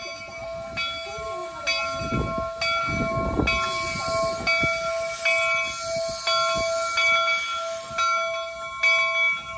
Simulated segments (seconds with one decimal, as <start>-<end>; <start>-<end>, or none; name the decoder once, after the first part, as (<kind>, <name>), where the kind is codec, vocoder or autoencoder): none